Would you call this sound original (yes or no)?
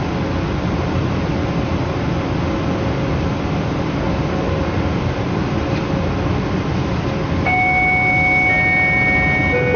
yes